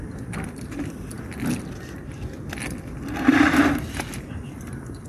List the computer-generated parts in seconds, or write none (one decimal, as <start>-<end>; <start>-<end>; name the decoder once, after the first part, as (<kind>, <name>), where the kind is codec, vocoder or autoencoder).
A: 0.0-1.1 (vocoder, BigVGAN v2); 2.6-5.1